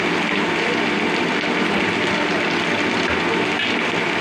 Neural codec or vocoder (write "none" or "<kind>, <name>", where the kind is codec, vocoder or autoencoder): none